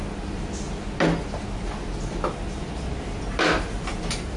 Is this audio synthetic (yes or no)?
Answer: no